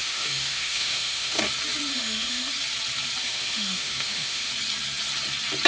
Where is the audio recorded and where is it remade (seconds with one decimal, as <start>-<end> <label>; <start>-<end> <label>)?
0.0-1.4 remade; 1.4-1.9 recorded; 1.9-2.5 remade; 2.5-3.2 recorded; 3.2-4.5 remade; 4.5-5.7 recorded